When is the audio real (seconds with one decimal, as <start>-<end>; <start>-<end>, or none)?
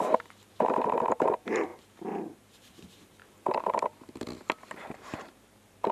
3.2-4.8